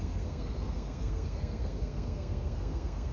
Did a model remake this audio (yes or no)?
yes